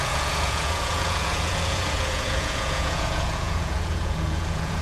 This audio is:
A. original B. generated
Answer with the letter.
B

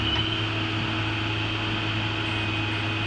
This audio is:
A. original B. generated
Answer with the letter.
A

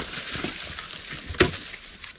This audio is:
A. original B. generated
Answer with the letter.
A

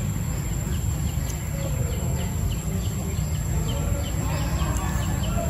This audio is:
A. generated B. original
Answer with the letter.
B